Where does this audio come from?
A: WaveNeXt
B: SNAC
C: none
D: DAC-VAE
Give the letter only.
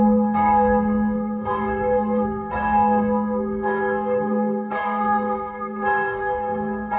B